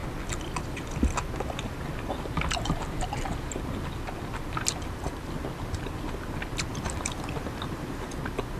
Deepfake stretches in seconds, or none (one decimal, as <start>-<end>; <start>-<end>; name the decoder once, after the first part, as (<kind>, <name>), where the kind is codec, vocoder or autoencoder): 6.7-8.1 (vocoder, BigVGAN v2)